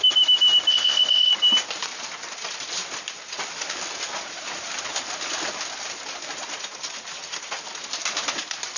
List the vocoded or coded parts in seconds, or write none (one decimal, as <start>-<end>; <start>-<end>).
0.7-1.3